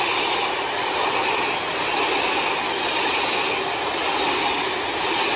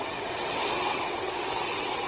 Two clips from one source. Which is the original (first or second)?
first